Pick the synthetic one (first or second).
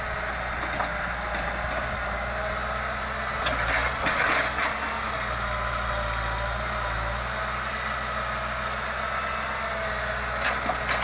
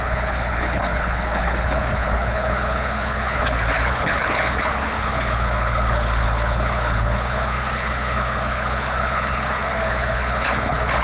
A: second